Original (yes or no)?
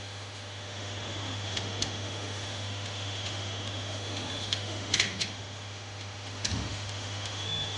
no